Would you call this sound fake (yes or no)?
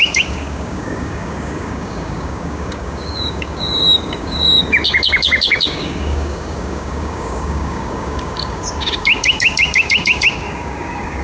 yes